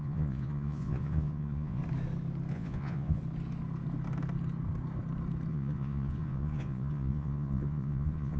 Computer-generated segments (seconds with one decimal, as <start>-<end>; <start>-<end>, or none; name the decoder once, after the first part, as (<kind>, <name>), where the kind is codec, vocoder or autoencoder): 0.0-1.8 (vocoder, Vocos); 2.5-3.2; 5.5-8.4